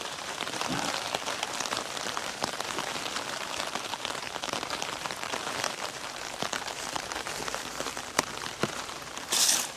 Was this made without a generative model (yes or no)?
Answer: no